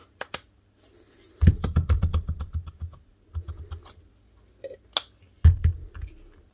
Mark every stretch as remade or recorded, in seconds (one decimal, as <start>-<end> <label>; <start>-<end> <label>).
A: 0.0-6.5 recorded